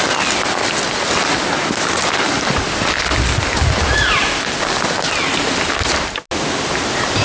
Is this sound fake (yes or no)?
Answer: no